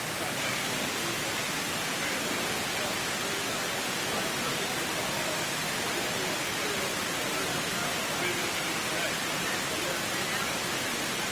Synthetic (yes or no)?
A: no